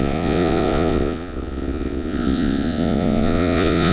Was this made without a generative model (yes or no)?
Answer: no